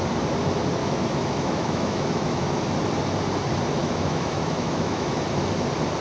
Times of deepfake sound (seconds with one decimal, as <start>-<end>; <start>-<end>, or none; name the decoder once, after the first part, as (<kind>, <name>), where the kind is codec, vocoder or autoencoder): 0.8-2.6 (autoencoder, DAC-VAE); 3.8-5.2